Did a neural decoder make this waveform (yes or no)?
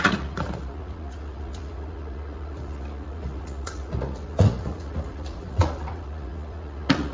yes